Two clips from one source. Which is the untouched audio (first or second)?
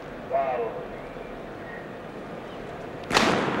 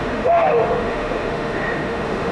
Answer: first